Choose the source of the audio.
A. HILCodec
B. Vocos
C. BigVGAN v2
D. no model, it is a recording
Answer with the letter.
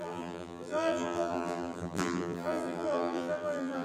C